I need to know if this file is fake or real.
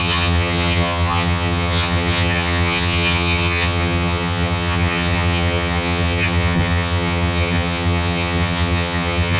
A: fake